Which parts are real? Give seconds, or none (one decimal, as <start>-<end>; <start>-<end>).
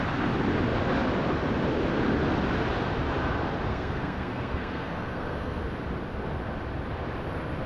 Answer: 0.0-3.7; 5.6-7.7